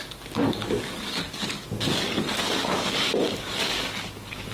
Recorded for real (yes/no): no